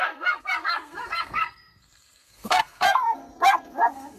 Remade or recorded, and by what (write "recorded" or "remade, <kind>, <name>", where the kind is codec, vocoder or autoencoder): remade, codec, SNAC